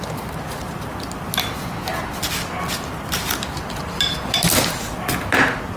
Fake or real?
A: real